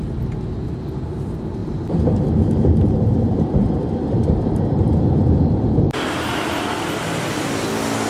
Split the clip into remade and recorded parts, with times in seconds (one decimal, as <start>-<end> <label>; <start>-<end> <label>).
0.0-1.6 recorded; 1.6-6.5 remade; 6.5-8.1 recorded